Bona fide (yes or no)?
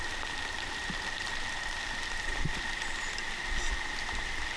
yes